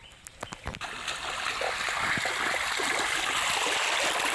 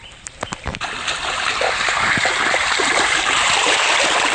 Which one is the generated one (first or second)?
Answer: second